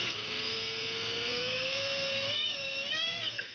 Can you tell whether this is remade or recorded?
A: remade